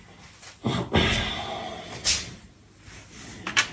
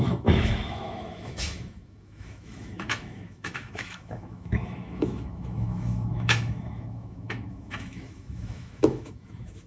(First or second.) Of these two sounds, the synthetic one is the second